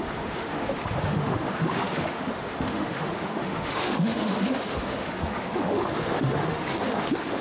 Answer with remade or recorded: remade